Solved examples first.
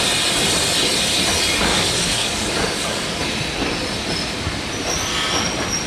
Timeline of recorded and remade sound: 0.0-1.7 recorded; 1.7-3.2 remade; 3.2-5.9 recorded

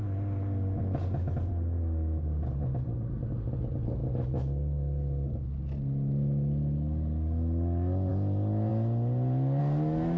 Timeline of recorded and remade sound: 0.0-10.2 recorded